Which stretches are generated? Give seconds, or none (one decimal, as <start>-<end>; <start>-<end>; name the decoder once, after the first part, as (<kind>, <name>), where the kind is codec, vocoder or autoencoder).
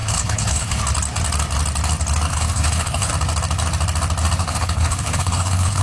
0.0-0.8 (codec, HILCodec); 2.3-3.1; 4.4-5.8